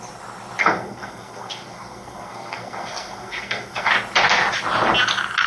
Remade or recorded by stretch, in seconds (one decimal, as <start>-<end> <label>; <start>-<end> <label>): 0.0-0.6 recorded; 0.6-3.9 remade; 3.9-5.5 recorded